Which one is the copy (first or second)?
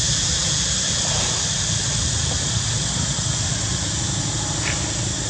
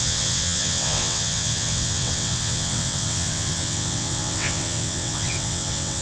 second